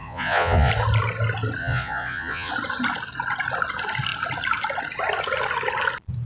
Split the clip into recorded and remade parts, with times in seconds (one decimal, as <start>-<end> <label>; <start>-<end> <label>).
0.0-0.7 remade; 0.7-1.6 recorded; 1.6-2.5 remade; 2.5-6.3 recorded